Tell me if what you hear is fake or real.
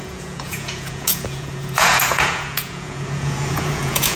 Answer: fake